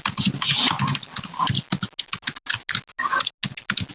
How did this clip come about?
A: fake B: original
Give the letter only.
B